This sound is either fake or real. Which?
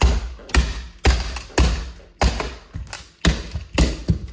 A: real